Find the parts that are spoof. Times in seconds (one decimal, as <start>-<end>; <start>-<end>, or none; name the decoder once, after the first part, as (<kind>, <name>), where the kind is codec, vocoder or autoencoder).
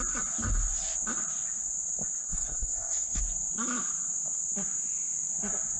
2.2-3.2 (codec, SNAC)